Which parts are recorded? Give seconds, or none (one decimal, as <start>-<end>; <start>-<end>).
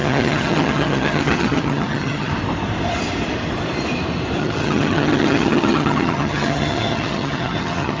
2.3-4.4